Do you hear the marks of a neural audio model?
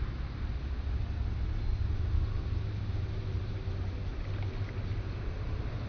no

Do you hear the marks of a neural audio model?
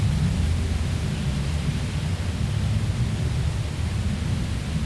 no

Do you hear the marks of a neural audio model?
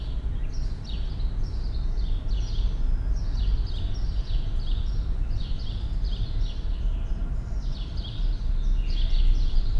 no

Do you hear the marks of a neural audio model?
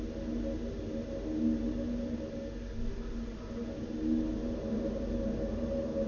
no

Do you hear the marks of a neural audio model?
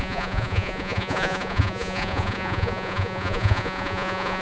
yes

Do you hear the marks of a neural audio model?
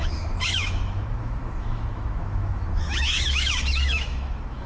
yes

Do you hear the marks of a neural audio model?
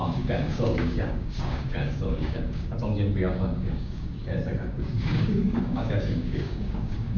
yes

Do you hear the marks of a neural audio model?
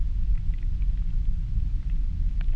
no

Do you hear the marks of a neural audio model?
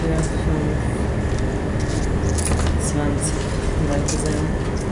no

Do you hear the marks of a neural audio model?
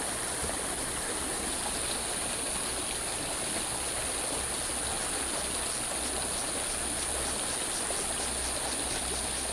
no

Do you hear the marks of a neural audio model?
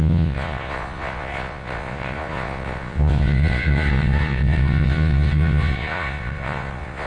yes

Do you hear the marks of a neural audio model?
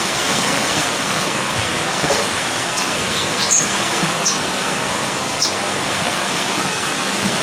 yes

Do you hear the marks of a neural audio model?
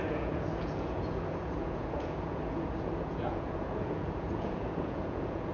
yes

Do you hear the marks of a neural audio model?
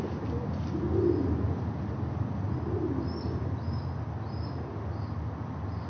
no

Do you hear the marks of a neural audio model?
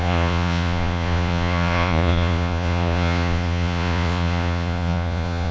yes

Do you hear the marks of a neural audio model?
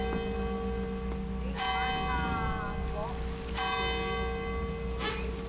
no